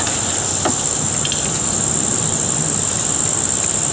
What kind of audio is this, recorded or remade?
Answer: recorded